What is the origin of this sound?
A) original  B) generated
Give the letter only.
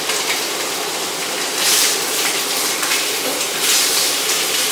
B